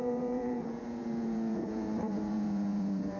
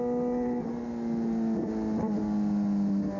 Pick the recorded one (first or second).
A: second